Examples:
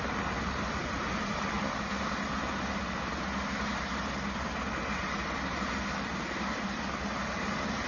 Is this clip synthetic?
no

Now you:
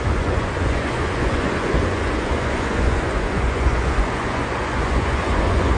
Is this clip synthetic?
yes